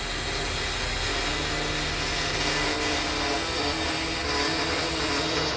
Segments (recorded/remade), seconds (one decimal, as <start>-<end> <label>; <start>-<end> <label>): 0.0-5.6 recorded

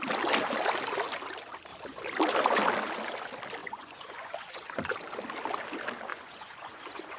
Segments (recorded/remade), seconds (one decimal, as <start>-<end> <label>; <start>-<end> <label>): 0.0-3.6 recorded; 3.6-4.8 remade; 4.8-6.1 recorded; 6.1-7.2 remade

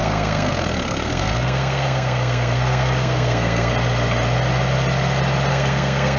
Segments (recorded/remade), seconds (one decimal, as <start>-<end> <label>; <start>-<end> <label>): 0.0-3.7 remade; 3.7-5.5 recorded; 5.5-6.2 remade